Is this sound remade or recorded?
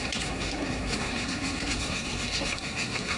remade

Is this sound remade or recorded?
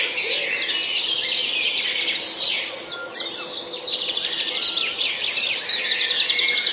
recorded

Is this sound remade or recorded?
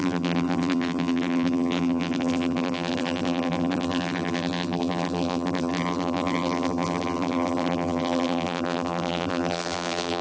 remade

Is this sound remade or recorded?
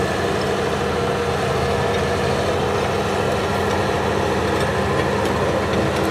recorded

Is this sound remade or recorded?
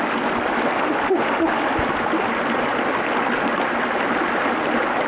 recorded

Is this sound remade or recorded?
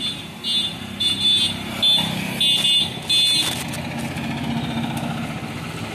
recorded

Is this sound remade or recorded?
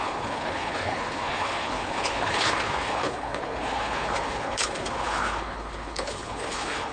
remade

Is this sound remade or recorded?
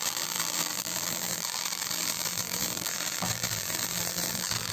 remade